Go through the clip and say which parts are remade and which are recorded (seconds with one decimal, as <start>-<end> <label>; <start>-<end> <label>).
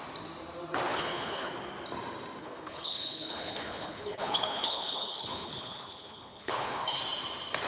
0.0-0.9 recorded; 0.9-1.5 remade; 1.5-2.4 recorded; 2.4-7.0 remade; 7.0-7.7 recorded